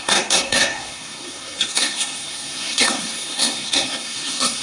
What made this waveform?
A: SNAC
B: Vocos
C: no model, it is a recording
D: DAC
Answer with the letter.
A